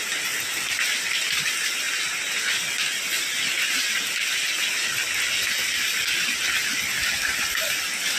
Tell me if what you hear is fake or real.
real